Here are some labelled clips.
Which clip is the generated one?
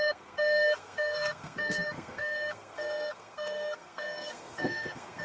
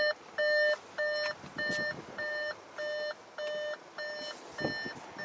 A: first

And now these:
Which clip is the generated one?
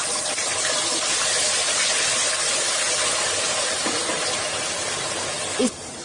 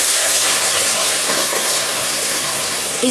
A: second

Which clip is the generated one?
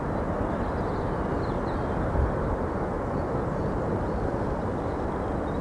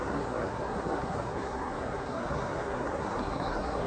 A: second